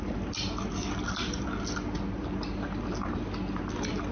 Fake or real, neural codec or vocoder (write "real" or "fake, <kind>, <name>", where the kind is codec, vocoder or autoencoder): real